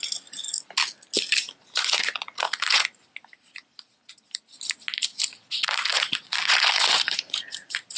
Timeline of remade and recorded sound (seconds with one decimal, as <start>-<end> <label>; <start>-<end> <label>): 0.0-1.6 recorded; 1.6-3.0 remade; 3.0-5.1 recorded; 5.1-8.0 remade